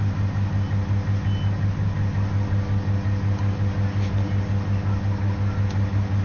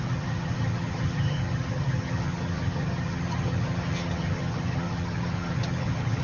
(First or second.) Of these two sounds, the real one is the first